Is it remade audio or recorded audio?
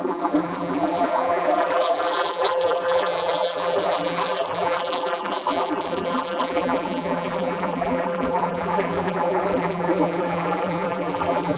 remade